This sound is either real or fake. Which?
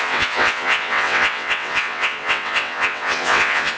fake